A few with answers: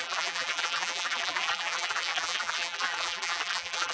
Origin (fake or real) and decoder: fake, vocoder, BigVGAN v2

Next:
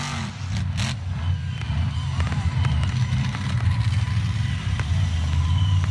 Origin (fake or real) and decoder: real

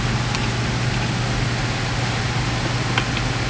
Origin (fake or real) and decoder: real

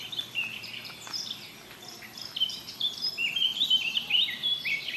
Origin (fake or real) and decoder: fake, vocoder, BigVGAN v2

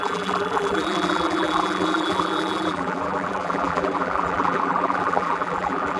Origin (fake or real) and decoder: fake, vocoder, BigVGAN v2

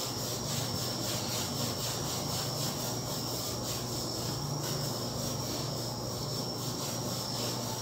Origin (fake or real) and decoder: real